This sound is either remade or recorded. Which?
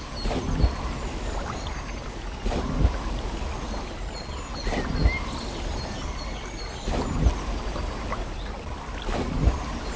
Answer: recorded